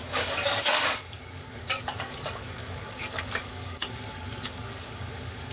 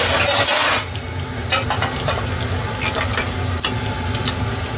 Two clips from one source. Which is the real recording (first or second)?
second